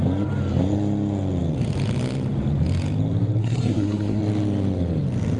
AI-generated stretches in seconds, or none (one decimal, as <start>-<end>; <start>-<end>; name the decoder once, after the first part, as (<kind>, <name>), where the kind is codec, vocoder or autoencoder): 3.4-4.2 (codec, SNAC)